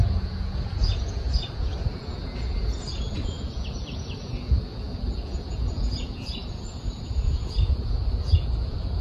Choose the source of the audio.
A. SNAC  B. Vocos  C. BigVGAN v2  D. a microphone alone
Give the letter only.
B